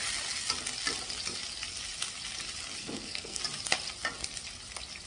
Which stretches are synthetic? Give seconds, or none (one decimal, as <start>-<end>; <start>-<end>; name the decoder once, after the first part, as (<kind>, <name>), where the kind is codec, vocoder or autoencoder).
2.8-3.4 (codec, SNAC)

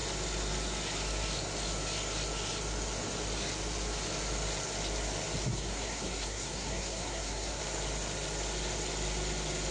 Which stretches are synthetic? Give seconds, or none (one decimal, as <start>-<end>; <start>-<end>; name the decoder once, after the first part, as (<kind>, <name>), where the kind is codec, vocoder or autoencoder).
5.5-7.6 (codec, SNAC)

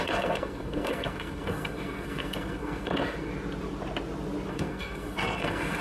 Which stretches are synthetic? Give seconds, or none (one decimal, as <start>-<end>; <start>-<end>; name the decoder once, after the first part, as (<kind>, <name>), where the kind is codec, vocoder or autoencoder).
0.0-3.3 (codec, SNAC); 4.5-5.8